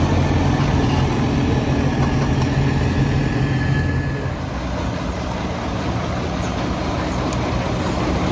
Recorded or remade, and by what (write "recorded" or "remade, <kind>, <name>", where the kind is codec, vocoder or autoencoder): recorded